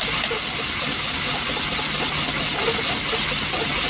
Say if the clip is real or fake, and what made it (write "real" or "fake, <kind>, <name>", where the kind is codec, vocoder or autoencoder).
real